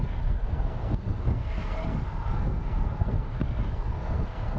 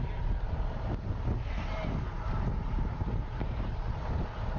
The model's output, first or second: first